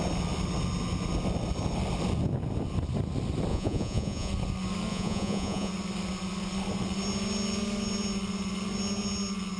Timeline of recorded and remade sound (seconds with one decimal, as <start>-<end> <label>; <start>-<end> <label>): 0.0-3.5 recorded; 3.5-4.3 remade; 4.3-4.9 recorded; 4.9-5.7 remade; 5.7-9.6 recorded